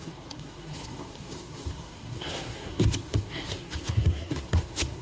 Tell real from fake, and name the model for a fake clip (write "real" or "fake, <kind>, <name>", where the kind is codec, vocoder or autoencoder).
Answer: fake, codec, SNAC